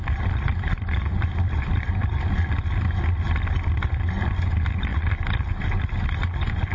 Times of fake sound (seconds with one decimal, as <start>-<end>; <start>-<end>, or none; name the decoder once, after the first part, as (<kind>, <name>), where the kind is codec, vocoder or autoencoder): none